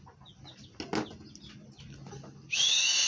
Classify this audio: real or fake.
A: real